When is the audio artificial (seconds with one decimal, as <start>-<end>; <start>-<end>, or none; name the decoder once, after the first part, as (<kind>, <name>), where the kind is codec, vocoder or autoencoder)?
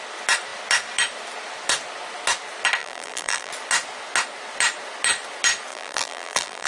2.8-3.5 (vocoder, BigVGAN v2); 5.7-6.7